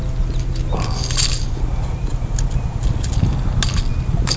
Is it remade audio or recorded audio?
recorded